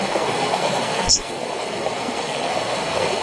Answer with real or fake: fake